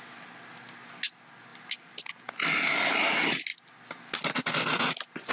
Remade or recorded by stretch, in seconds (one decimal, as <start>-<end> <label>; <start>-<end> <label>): 0.0-5.3 recorded